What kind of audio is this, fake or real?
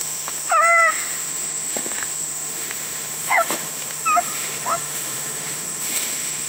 fake